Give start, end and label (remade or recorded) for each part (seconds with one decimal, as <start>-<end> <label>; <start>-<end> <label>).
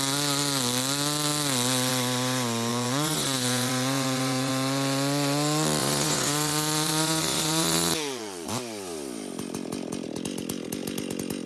0.0-2.7 recorded; 2.7-4.5 remade; 4.5-5.8 recorded; 5.8-8.5 remade; 8.5-11.5 recorded